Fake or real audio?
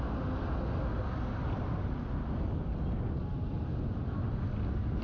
real